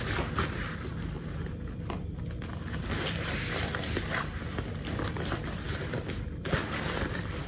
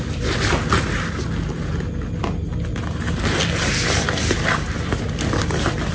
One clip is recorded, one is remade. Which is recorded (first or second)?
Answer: second